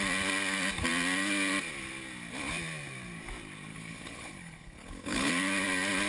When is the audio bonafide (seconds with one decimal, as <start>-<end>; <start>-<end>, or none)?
0.0-3.7; 5.3-6.1